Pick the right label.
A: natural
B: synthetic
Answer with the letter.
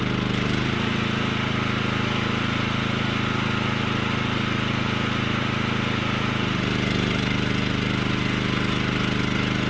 A